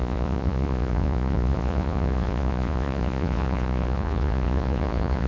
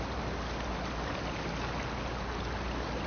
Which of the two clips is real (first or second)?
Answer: second